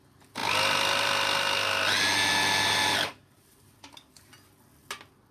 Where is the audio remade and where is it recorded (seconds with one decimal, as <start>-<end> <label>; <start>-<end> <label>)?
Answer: 0.0-5.3 recorded